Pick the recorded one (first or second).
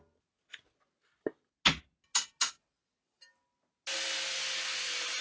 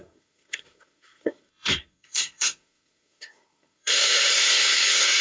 first